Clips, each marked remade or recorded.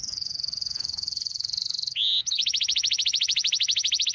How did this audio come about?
remade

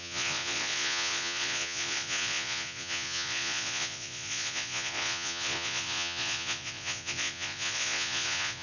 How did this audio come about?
remade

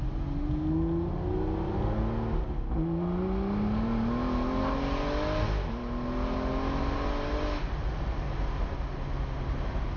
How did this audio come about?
recorded